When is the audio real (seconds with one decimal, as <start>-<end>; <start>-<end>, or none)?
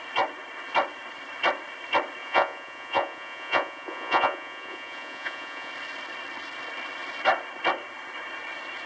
0.0-2.2; 5.7-8.9